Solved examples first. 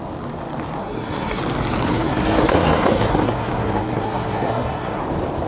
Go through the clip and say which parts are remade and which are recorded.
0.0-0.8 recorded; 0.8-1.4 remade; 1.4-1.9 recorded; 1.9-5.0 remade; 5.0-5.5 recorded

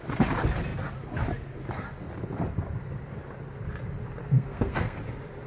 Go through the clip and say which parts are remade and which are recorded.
0.0-4.2 recorded; 4.2-5.0 remade; 5.0-5.5 recorded

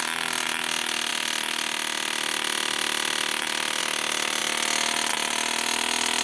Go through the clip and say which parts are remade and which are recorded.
0.0-6.2 recorded

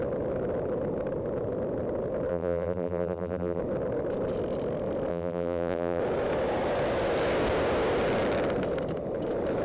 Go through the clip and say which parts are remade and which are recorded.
0.0-2.3 recorded; 2.3-3.6 remade; 3.6-5.1 recorded; 5.1-6.0 remade; 6.0-9.6 recorded

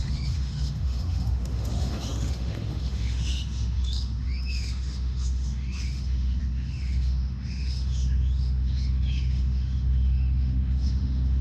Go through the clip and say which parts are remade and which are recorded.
0.0-11.4 remade

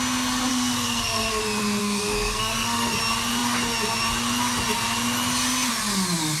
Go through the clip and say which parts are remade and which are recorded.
0.0-0.5 recorded; 0.5-1.4 remade; 1.4-1.8 recorded; 1.8-3.0 remade; 3.0-6.4 recorded

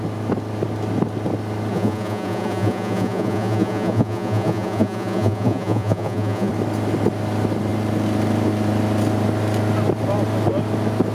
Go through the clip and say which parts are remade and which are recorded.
0.0-1.7 recorded; 1.7-6.5 remade; 6.5-11.1 recorded

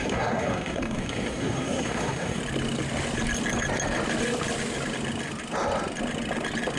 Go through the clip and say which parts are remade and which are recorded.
0.0-2.4 remade; 2.4-6.8 recorded